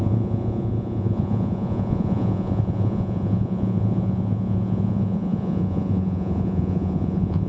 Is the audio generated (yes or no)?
yes